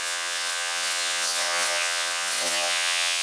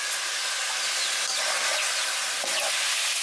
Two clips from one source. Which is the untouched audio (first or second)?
second